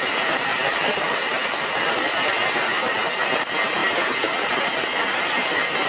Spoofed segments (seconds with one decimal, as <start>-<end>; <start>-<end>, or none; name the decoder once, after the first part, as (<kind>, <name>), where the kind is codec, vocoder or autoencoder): none